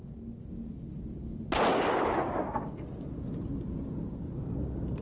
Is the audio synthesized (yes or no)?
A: no